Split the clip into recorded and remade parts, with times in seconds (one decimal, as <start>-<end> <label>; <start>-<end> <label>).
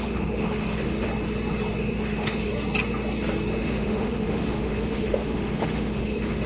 0.0-1.1 remade; 1.1-1.8 recorded; 1.8-2.5 remade; 2.5-3.6 recorded; 3.6-6.5 remade